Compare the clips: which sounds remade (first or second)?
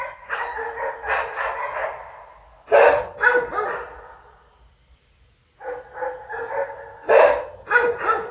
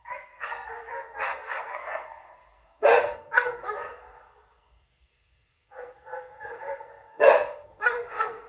second